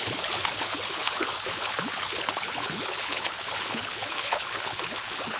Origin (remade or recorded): remade